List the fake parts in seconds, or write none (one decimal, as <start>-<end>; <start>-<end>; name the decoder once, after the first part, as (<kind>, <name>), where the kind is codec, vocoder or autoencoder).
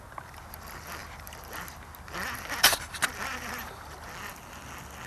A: none